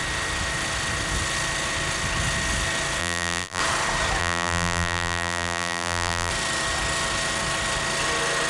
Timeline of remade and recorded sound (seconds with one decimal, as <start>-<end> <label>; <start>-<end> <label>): 0.0-3.0 recorded; 3.0-3.6 remade; 3.6-4.2 recorded; 4.2-6.3 remade; 6.3-8.5 recorded